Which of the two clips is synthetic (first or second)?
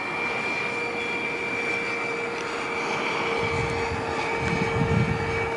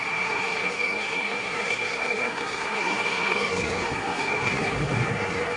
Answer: second